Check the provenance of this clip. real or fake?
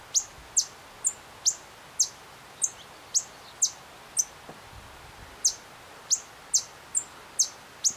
real